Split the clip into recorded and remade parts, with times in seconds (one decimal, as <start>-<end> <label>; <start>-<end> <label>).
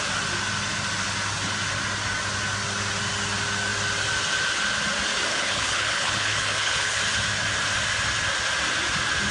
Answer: 0.0-5.3 recorded; 5.3-7.0 remade; 7.0-9.3 recorded